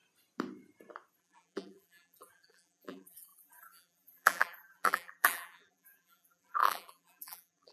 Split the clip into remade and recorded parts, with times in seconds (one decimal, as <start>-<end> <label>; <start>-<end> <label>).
0.0-1.2 recorded; 1.2-7.7 remade